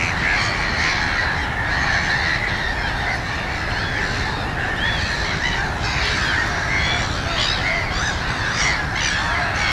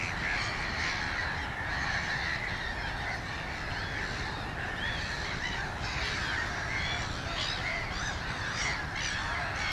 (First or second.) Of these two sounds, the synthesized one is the second